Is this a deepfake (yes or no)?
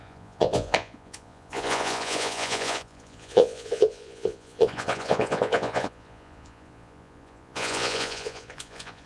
yes